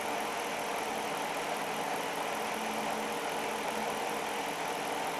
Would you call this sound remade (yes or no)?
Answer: no